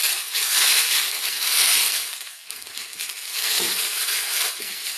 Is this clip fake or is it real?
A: fake